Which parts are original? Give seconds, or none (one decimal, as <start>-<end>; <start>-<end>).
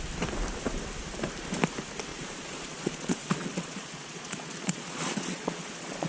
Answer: 0.0-2.1